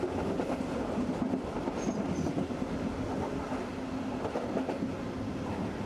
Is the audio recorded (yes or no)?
yes